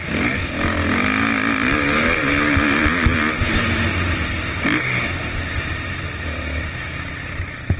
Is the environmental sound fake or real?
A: real